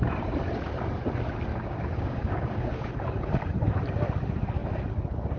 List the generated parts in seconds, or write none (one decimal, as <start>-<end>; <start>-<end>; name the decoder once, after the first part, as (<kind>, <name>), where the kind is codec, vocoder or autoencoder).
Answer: 1.5-2.9 (codec, DAC)